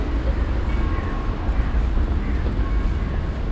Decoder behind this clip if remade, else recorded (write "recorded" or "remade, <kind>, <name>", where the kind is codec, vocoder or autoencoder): recorded